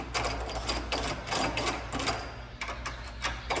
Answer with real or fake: real